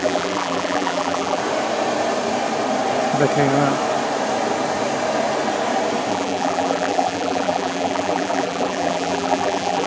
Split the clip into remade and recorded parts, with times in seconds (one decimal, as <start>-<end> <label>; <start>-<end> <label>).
0.0-1.4 remade; 1.4-6.1 recorded; 6.1-9.9 remade